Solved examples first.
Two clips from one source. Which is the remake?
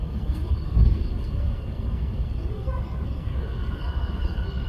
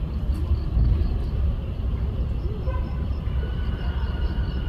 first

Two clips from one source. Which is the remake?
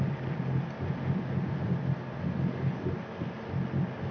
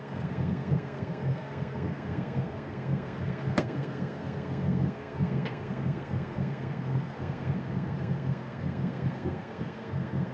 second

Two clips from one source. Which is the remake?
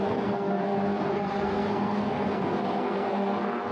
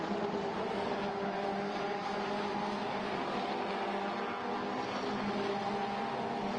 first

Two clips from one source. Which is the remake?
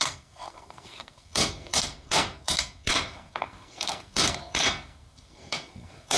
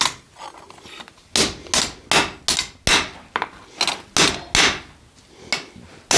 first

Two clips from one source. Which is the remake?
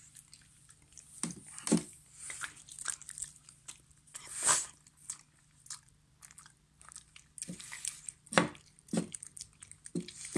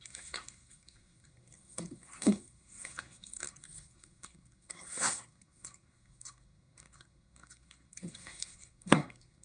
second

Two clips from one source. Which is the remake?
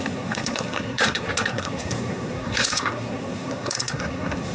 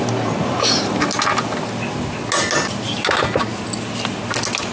first